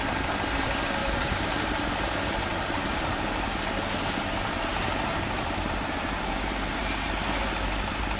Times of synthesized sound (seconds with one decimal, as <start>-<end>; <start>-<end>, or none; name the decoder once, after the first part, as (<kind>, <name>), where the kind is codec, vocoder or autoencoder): 1.0-1.9 (vocoder, BigVGAN v2); 2.5-3.1; 4.7-6.8